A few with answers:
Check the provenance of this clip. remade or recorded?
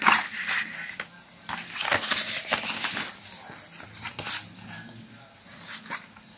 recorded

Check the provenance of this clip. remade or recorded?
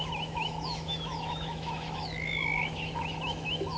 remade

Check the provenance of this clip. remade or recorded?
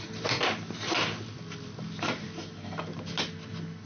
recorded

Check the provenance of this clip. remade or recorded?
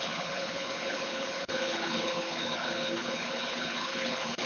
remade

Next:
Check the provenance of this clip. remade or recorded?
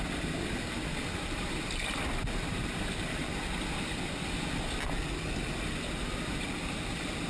recorded